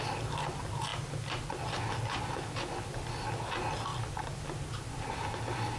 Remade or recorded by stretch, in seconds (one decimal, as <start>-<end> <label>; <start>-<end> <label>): 0.0-0.9 recorded; 0.9-2.4 remade; 2.4-3.9 recorded; 3.9-5.1 remade; 5.1-5.8 recorded